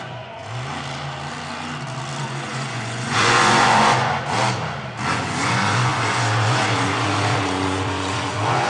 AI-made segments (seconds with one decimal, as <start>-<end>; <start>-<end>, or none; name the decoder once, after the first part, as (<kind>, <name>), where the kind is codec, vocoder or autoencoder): 0.0-0.4 (vocoder, Vocos); 2.2-4.4; 5.1-8.7